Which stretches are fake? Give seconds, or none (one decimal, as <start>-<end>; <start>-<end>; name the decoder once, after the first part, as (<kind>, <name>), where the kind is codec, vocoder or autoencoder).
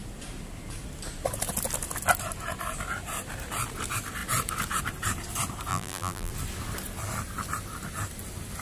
5.7-6.3 (vocoder, BigVGAN v2)